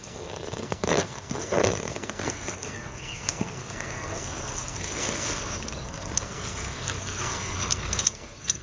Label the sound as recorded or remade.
remade